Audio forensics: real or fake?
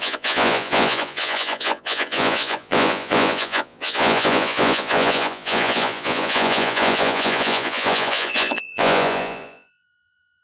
fake